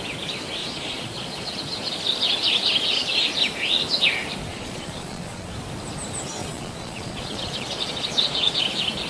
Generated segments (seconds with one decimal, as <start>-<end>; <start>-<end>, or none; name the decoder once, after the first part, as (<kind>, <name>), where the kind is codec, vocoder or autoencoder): 0.6-1.5 (vocoder, Vocos); 4.5-5.5; 6.4-8.6